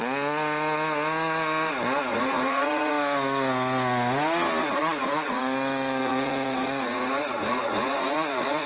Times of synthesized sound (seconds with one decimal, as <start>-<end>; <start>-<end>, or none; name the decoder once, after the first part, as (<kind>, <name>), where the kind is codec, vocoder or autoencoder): 2.1-2.9 (vocoder, Vocos); 4.6-5.4; 6.0-8.7